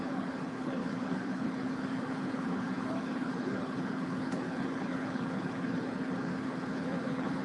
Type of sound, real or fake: fake